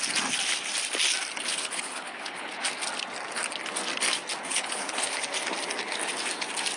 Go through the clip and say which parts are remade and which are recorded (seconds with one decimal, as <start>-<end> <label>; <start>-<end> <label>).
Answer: 0.0-1.5 recorded; 1.5-2.5 remade; 2.5-4.5 recorded; 4.5-5.2 remade; 5.2-6.8 recorded